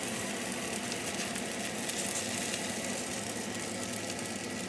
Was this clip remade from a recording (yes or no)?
no